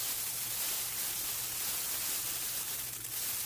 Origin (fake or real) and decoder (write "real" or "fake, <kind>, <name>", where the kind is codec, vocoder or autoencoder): real